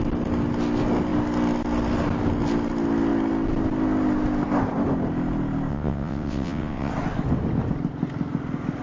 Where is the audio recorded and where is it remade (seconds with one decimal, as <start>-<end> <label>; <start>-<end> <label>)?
0.0-5.7 recorded; 5.7-6.9 remade; 6.9-8.8 recorded